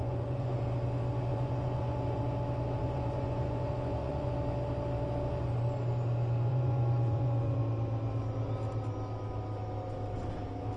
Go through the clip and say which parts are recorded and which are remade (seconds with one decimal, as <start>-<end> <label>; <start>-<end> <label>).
0.0-0.6 remade; 0.6-1.3 recorded; 1.3-2.2 remade; 2.2-2.8 recorded; 2.8-4.3 remade; 4.3-6.5 recorded; 6.5-7.6 remade; 7.6-10.8 recorded